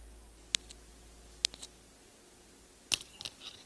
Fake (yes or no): no